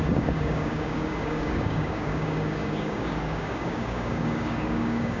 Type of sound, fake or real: fake